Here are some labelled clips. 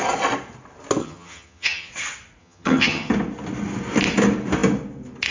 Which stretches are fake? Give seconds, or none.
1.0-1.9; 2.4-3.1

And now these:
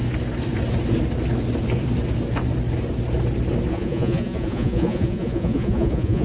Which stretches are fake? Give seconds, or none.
3.7-6.2